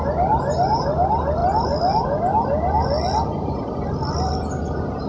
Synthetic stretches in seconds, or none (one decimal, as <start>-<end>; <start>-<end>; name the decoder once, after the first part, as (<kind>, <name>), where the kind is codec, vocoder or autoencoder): none